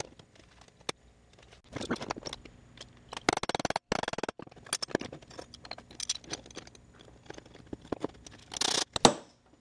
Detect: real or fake real